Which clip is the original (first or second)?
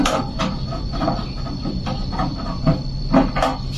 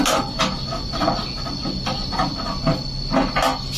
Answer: second